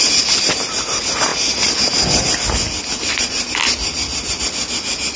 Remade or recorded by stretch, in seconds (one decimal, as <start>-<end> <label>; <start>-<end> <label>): 0.0-5.2 recorded

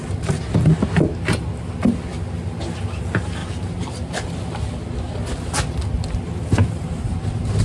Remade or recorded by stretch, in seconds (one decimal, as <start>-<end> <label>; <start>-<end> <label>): 0.0-0.5 remade; 0.5-3.4 recorded; 3.4-4.7 remade; 4.7-6.6 recorded; 6.6-7.6 remade

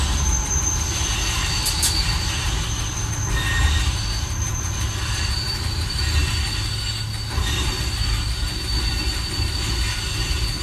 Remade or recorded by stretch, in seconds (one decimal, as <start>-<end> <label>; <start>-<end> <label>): 0.0-4.5 recorded; 4.5-6.0 remade; 6.0-10.6 recorded

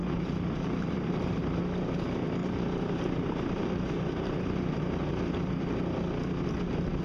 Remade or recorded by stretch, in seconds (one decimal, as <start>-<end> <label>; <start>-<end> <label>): 0.0-1.6 remade; 1.6-2.4 recorded; 2.4-4.6 remade; 4.6-7.0 recorded

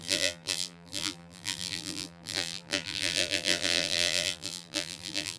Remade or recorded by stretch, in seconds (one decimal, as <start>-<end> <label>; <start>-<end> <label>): 0.0-5.4 remade

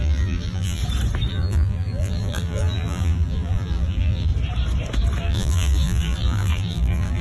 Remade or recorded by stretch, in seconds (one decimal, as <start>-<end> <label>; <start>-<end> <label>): 0.0-0.8 remade; 0.8-1.3 recorded; 1.3-4.3 remade; 4.3-5.2 recorded; 5.2-7.2 remade

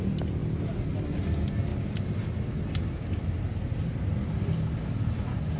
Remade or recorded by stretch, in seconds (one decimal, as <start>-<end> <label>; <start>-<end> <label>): 0.0-5.6 recorded